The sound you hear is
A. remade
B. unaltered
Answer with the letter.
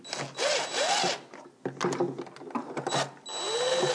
B